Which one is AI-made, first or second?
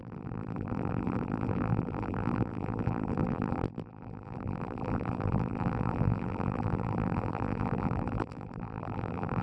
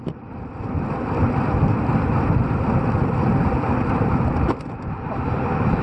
first